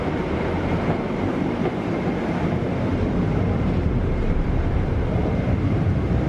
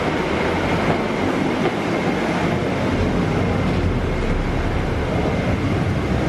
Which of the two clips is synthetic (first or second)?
first